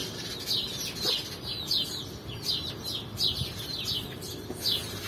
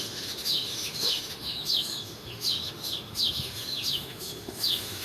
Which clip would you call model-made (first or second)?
second